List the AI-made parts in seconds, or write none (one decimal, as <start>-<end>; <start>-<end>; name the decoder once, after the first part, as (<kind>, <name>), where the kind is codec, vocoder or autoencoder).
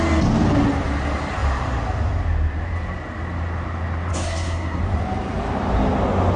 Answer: 4.1-4.8 (codec, SNAC)